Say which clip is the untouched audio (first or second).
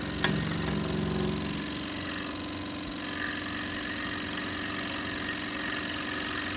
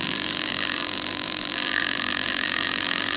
first